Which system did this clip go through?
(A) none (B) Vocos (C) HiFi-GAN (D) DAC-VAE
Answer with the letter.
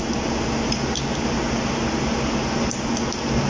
A